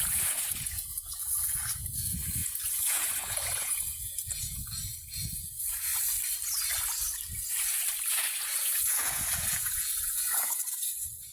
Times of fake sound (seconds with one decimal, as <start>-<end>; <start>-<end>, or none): 0.0-5.9; 8.1-11.3